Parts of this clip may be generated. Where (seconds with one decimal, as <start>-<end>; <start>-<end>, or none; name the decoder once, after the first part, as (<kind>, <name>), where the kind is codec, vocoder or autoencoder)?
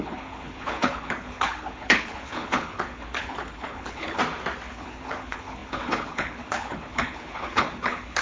0.0-4.2 (codec, HILCodec); 4.7-8.2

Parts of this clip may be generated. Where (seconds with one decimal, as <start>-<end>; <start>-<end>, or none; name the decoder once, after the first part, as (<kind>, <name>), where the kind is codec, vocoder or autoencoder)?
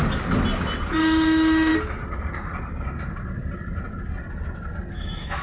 1.0-1.7 (autoencoder, DAC-VAE); 4.9-5.4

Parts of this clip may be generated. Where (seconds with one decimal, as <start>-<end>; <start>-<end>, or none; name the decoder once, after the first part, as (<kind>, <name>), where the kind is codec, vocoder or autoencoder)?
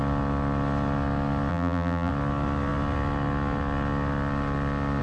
1.5-2.1 (vocoder, BigVGAN v2)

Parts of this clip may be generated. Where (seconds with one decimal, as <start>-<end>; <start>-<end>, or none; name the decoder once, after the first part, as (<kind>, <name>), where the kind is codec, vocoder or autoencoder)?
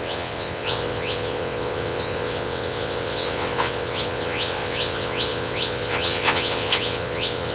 0.0-7.5 (vocoder, WaveNeXt)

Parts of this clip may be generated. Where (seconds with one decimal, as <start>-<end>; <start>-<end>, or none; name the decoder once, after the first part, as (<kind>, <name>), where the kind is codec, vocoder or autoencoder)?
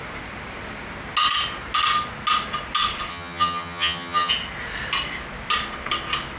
3.1-4.3 (vocoder, HiFi-GAN)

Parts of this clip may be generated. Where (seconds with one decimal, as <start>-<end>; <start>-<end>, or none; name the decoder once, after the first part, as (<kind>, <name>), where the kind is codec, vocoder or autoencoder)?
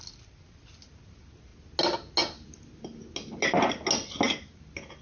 none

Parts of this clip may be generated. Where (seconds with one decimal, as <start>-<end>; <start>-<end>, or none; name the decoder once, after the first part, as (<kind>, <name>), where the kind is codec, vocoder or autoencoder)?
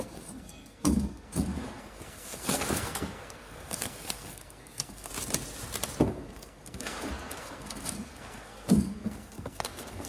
0.0-5.1 (codec, SNAC); 6.0-10.1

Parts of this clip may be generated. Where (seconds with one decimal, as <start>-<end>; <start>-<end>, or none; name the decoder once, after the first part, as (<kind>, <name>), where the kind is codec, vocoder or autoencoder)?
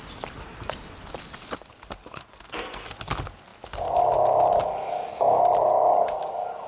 2.0-2.9 (codec, SNAC)